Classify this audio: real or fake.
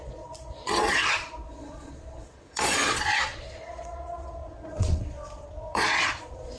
fake